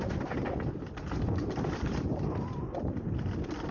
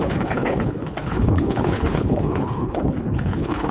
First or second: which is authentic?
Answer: first